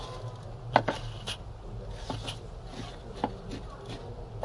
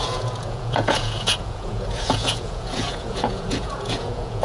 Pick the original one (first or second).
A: first